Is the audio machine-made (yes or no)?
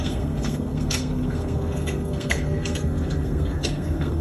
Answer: yes